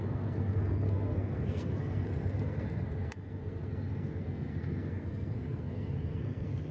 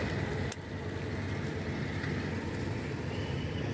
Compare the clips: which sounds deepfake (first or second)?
first